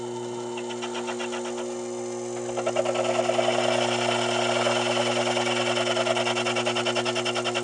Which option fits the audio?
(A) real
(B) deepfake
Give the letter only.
A